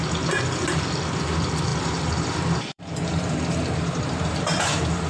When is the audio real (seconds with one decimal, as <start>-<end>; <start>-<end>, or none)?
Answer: 0.0-1.7